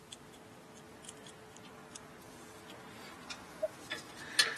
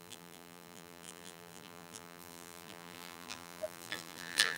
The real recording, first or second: first